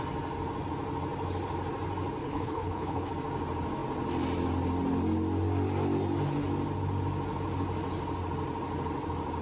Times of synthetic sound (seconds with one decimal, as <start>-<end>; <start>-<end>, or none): 2.2-3.1